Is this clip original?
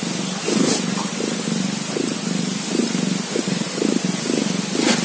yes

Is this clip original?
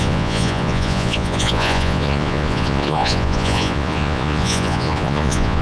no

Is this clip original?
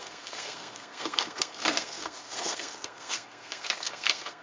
no